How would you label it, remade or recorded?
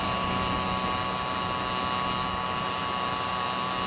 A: recorded